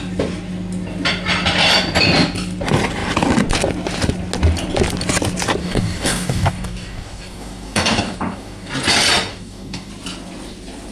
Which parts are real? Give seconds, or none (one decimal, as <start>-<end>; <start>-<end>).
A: 0.0-5.6; 8.7-9.3; 9.9-10.9